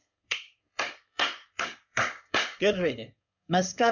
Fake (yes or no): yes